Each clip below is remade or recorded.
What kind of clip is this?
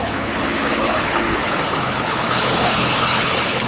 remade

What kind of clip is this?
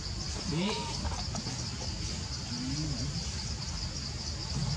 recorded